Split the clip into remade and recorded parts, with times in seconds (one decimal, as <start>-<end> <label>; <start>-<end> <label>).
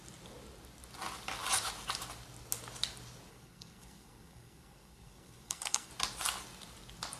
0.0-3.3 recorded; 3.3-5.9 remade; 5.9-7.2 recorded